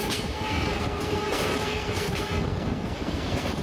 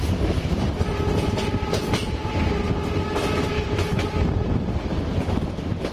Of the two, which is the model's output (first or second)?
first